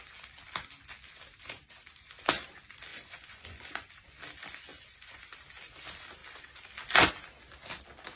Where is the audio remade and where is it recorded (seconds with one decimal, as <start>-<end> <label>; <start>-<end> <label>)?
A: 0.0-2.9 recorded; 2.9-3.9 remade; 3.9-4.7 recorded; 4.7-5.2 remade; 5.2-8.2 recorded